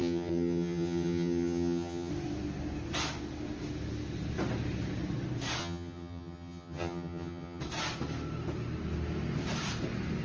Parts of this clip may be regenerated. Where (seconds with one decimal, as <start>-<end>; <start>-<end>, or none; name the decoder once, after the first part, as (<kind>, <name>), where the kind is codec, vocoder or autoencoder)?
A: 0.0-2.1 (vocoder, HiFi-GAN); 5.6-7.6